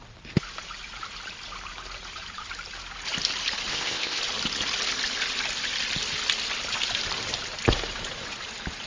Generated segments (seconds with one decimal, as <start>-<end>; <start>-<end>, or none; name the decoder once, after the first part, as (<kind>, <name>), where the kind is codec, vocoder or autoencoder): 3.7-4.2 (codec, ZipCodec)